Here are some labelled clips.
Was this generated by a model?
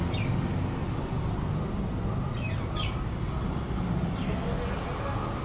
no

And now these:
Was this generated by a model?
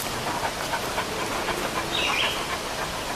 no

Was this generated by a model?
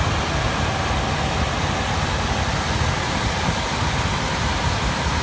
no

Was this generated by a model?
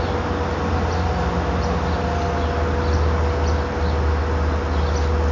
no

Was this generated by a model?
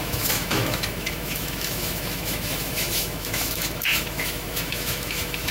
yes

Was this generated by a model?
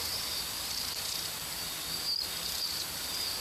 no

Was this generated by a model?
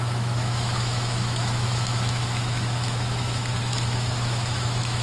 yes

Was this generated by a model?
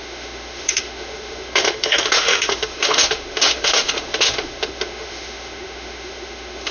yes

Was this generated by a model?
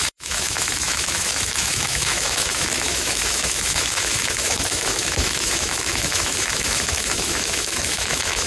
yes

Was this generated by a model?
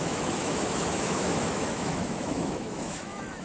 yes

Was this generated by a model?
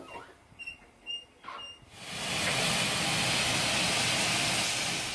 no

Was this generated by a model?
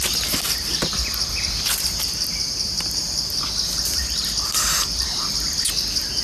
no